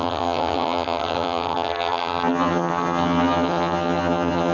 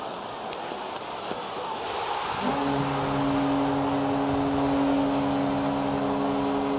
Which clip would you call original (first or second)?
second